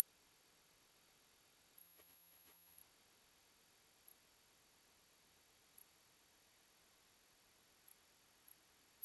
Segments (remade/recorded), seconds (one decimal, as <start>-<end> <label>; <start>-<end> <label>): 0.0-1.8 recorded; 1.8-2.8 remade; 2.8-9.0 recorded